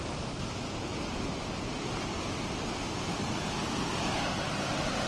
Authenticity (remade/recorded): recorded